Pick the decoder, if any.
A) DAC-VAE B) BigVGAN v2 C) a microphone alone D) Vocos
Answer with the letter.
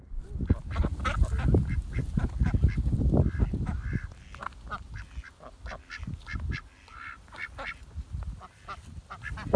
C